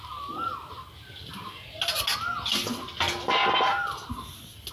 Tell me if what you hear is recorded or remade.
recorded